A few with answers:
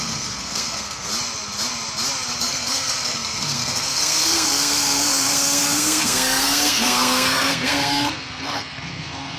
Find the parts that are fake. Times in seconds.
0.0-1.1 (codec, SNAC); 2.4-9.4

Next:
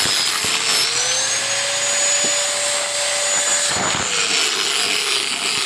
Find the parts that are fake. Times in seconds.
none

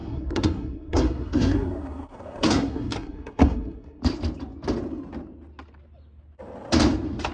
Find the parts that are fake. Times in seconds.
0.0-4.0 (codec, SNAC)

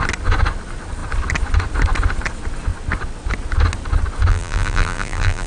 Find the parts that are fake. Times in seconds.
4.3-5.5 (vocoder, BigVGAN v2)

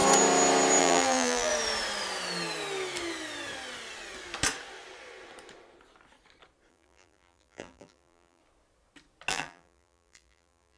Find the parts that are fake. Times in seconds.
0.8-1.5 (vocoder, BigVGAN v2); 6.7-8.4; 9.3-10.8

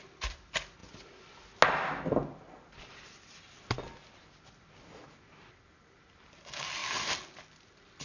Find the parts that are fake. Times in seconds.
none

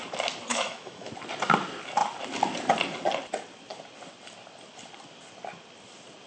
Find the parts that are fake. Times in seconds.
0.5-1.1 (autoencoder, DAC-VAE)

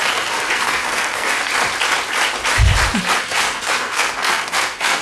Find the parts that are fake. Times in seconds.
0.0-1.5 (codec, SNAC); 3.2-5.0